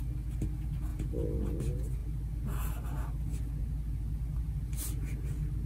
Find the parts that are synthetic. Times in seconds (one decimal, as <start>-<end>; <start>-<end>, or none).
0.9-1.4

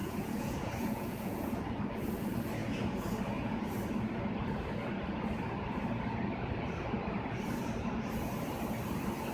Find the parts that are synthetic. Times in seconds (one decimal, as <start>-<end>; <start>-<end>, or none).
0.0-1.6; 2.6-3.6

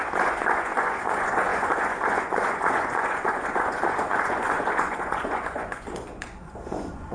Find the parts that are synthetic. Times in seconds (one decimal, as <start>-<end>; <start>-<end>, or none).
0.0-7.1

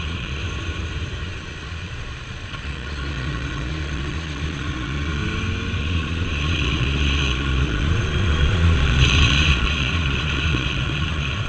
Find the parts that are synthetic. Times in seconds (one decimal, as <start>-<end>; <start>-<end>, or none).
0.0-0.4; 1.2-5.2; 5.8-11.5

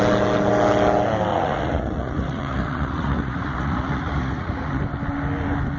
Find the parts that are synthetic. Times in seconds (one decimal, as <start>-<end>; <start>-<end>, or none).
1.3-4.8

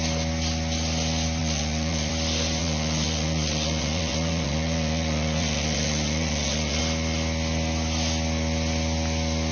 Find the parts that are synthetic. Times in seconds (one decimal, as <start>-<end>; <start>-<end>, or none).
1.4-2.1; 2.6-6.8

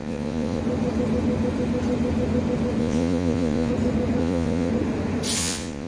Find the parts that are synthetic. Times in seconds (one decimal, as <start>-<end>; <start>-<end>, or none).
0.0-0.6; 2.8-3.7; 4.2-4.7; 5.4-5.9